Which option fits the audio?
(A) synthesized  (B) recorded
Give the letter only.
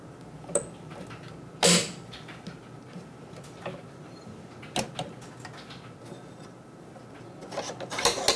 B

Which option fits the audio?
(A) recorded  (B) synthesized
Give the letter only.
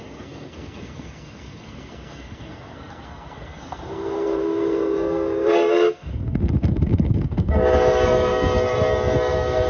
B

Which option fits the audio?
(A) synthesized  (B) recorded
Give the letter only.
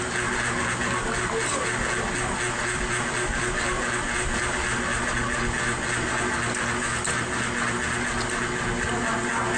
B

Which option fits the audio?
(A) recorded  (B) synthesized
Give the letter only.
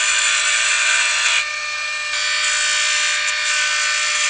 A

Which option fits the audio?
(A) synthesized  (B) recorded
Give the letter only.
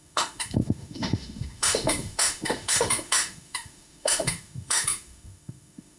A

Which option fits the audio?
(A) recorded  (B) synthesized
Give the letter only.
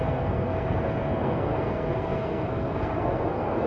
B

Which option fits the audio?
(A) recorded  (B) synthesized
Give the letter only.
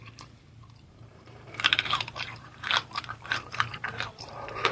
B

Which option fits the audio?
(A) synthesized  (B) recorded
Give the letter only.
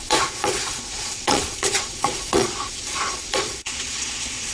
A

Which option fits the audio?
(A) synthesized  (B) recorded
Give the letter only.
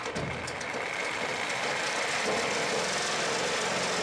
B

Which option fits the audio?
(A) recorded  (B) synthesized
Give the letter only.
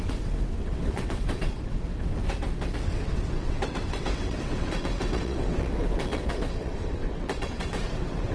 B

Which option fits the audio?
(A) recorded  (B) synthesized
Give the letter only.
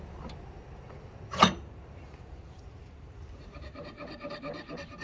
B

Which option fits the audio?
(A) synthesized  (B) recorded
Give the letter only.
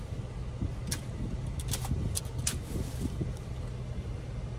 B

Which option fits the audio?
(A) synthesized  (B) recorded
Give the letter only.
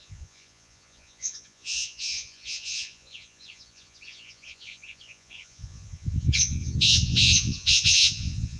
A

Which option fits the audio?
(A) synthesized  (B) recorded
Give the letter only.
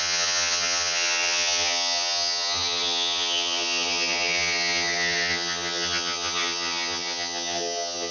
A